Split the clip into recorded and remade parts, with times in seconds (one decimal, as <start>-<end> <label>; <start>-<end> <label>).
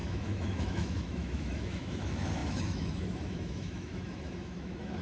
0.0-5.0 remade